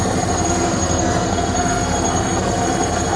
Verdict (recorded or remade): remade